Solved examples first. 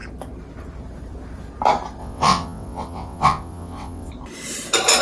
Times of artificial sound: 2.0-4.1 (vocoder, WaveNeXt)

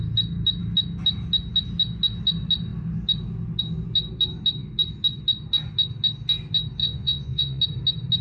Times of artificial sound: 6.8-7.6 (vocoder, Vocos)

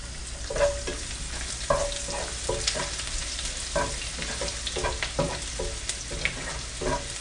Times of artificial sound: none

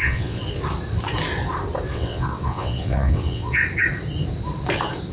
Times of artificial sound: 0.0-0.4 (vocoder, WaveNeXt); 1.9-3.6

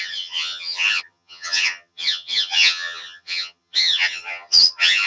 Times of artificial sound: 0.0-5.1 (vocoder, HiFi-GAN)